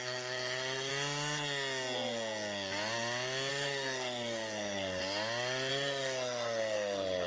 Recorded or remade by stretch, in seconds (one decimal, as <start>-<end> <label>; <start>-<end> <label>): 0.0-0.9 remade; 0.9-3.5 recorded; 3.5-5.0 remade; 5.0-5.7 recorded; 5.7-7.3 remade